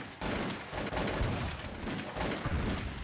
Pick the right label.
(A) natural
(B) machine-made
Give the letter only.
A